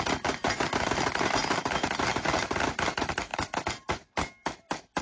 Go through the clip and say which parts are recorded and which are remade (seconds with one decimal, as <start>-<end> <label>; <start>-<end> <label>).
0.0-5.0 recorded